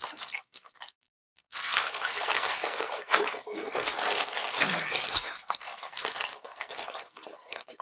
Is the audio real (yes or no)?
no